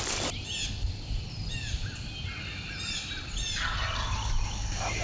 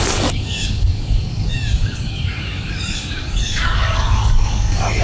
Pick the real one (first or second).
first